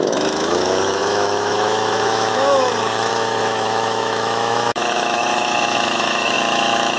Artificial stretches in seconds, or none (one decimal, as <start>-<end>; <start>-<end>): 0.0-7.0